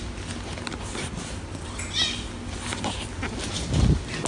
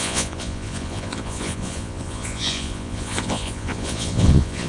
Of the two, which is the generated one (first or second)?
second